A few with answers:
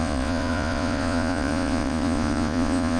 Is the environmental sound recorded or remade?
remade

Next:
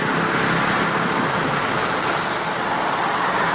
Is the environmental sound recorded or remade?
recorded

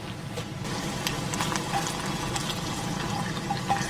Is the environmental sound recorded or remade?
recorded